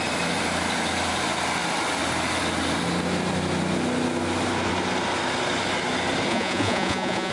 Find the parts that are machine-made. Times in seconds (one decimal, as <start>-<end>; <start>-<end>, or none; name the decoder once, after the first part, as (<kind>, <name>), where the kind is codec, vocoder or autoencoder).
6.3-7.3 (vocoder, Vocos)